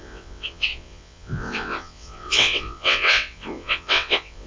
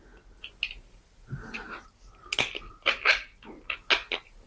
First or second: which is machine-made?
first